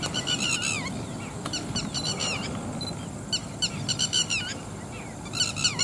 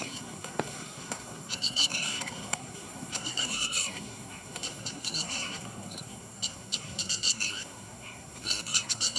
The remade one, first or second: second